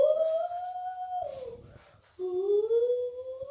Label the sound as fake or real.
real